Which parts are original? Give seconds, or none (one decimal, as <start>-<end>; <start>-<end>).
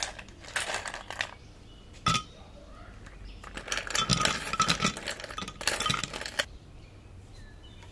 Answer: 0.0-7.9